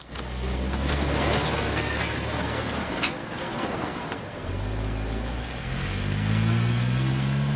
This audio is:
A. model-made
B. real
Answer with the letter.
A